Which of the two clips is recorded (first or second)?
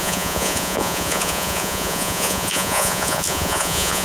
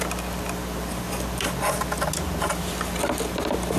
second